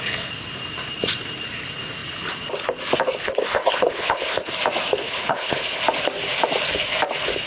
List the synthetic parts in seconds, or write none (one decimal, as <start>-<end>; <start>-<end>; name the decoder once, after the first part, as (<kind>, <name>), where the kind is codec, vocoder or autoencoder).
3.2-4.5 (codec, HILCodec); 5.0-5.8